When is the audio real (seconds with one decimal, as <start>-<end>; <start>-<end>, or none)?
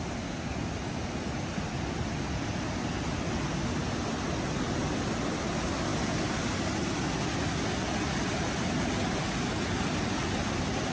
0.0-10.9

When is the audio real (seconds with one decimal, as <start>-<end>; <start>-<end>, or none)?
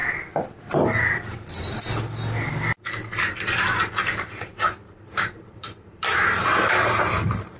0.0-4.3